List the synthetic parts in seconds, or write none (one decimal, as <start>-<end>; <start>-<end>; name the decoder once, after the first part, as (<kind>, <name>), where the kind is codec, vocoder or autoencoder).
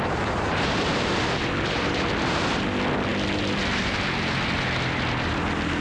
none